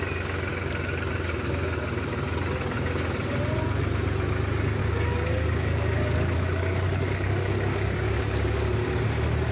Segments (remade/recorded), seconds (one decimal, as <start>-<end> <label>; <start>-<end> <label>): 0.0-0.5 recorded; 0.5-1.1 remade; 1.1-4.8 recorded; 4.8-9.0 remade; 9.0-9.5 recorded